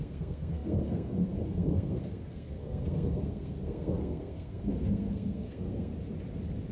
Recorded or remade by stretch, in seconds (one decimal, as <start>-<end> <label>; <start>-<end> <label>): 0.0-5.9 remade; 5.9-6.7 recorded